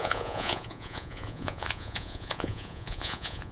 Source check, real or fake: fake